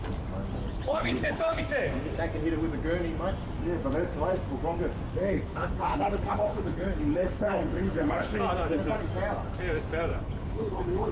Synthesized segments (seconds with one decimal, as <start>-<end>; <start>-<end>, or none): 0.6-1.6; 5.1-8.4; 10.1-11.1